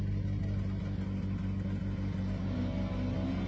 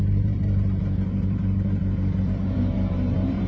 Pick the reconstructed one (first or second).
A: second